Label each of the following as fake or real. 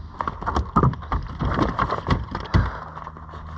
real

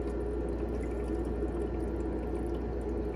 real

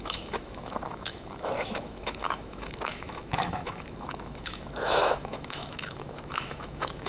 fake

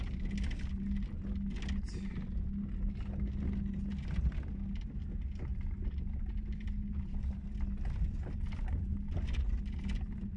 real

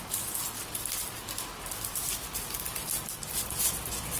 real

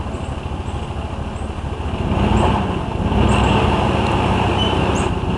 real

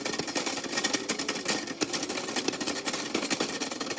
real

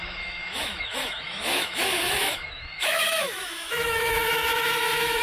fake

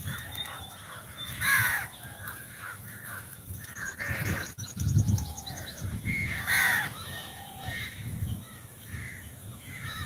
fake